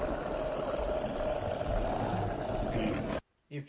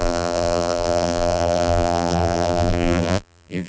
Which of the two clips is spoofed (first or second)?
second